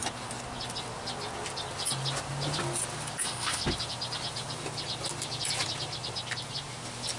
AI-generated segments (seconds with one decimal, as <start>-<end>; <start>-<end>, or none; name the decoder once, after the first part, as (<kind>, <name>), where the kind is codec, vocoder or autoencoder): 3.2-3.6 (autoencoder, DAC-VAE)